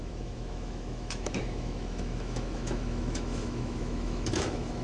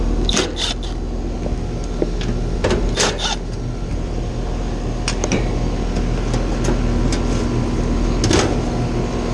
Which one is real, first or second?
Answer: second